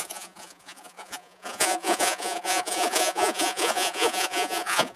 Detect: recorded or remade remade